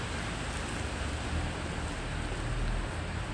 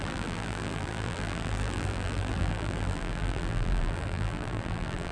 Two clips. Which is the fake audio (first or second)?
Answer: second